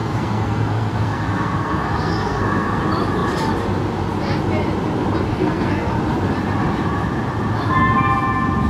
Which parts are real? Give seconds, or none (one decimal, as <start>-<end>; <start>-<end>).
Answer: 2.8-5.3; 5.9-8.7